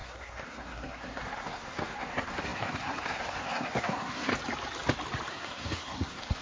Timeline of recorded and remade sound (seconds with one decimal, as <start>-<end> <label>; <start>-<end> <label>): 0.0-4.3 remade; 4.3-5.3 recorded; 5.3-6.4 remade